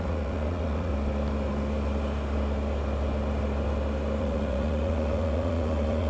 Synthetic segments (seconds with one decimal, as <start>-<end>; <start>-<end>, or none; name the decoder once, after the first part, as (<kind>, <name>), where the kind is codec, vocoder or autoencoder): 0.0-0.9 (vocoder, Vocos); 4.2-6.1